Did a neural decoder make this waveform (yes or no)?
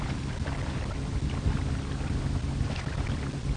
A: no